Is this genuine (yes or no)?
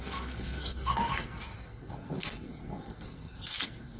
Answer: no